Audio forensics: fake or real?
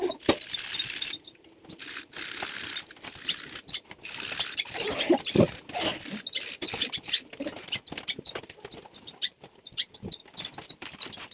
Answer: real